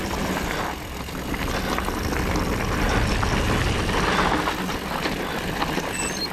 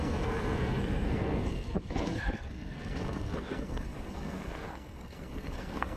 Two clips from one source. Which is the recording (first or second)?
first